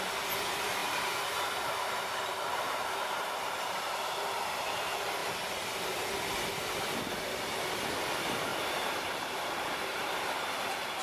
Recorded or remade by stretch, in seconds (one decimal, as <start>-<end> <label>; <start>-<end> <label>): 0.0-2.5 recorded; 2.5-4.3 remade; 4.3-8.5 recorded; 8.5-10.2 remade; 10.2-11.0 recorded